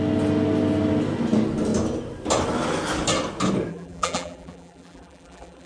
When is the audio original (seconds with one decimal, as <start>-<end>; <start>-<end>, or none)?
0.0-3.7